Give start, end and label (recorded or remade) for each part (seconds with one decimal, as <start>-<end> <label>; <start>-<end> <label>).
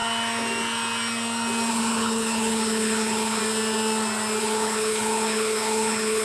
0.0-1.7 recorded; 1.7-3.4 remade; 3.4-4.4 recorded; 4.4-6.2 remade